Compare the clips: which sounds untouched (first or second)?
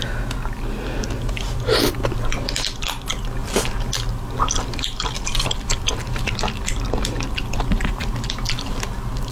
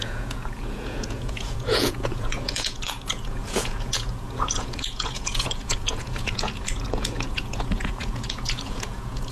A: first